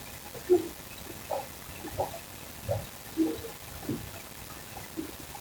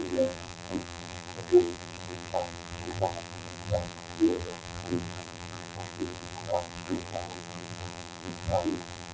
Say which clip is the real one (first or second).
first